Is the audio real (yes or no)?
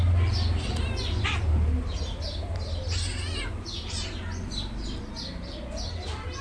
yes